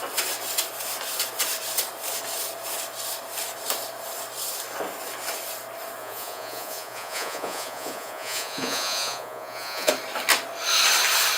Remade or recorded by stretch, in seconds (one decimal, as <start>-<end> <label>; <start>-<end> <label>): 0.0-6.0 recorded; 6.0-9.9 remade; 9.9-11.4 recorded